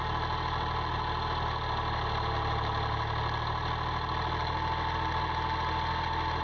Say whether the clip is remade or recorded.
recorded